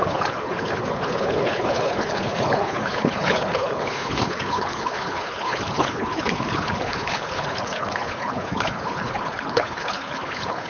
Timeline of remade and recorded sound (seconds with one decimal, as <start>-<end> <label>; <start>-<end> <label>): 0.0-10.7 remade